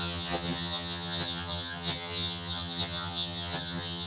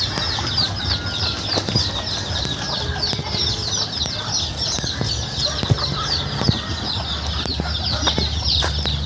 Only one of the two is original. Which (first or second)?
second